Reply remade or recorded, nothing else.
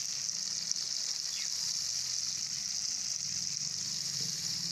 recorded